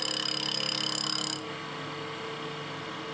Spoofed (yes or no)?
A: no